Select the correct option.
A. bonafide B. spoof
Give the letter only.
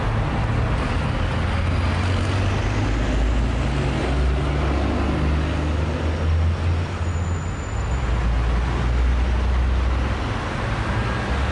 A